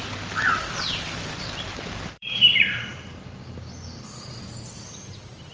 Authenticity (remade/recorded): remade